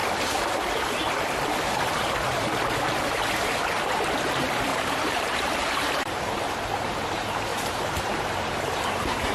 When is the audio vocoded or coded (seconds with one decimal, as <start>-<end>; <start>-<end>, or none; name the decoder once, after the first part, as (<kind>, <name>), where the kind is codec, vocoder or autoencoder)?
4.7-5.4 (vocoder, BigVGAN v2); 7.5-8.5